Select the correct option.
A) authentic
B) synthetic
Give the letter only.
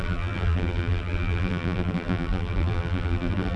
B